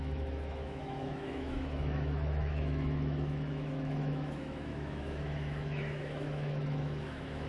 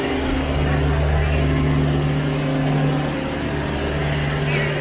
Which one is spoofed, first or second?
first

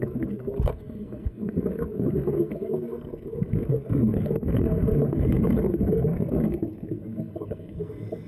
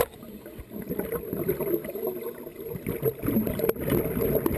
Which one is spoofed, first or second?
first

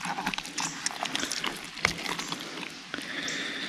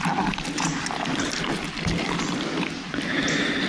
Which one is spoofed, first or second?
second